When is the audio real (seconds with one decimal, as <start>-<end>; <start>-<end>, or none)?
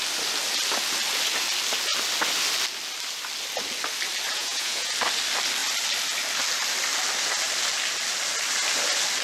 0.0-4.3; 4.9-9.2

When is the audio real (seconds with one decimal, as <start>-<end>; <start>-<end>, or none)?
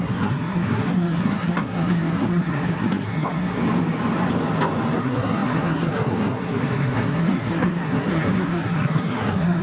3.6-5.0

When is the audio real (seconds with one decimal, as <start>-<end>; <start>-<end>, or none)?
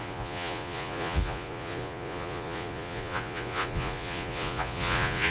none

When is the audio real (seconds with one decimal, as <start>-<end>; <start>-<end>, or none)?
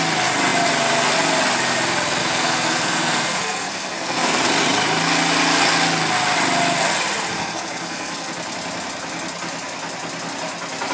0.0-2.2; 4.4-7.3; 8.3-10.9